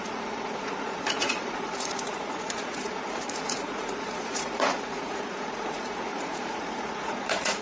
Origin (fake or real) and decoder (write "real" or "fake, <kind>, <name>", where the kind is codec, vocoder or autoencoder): fake, vocoder, Vocos